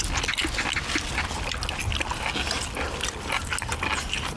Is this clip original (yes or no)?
yes